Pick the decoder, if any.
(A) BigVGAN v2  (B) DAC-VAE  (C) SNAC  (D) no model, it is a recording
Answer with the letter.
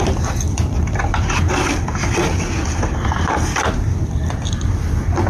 A